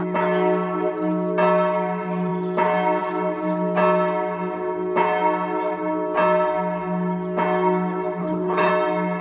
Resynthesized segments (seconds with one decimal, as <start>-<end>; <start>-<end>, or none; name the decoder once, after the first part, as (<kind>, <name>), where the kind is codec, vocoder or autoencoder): 8.2-8.7 (codec, HILCodec)

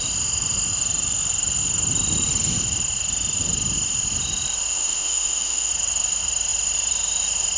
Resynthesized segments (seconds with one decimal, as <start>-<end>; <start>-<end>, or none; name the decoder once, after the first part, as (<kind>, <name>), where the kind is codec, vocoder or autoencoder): 4.7-5.7 (autoencoder, DAC-VAE)

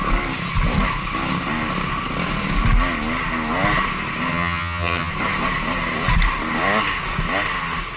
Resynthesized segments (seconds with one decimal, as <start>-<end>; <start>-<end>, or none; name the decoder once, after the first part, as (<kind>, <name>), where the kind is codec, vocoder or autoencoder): 4.3-5.1 (vocoder, HiFi-GAN)

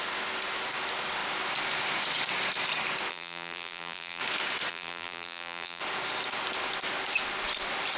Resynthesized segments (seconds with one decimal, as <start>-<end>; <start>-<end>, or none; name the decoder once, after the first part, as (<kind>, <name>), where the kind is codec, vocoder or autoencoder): 3.1-4.2 (vocoder, BigVGAN v2); 4.7-5.8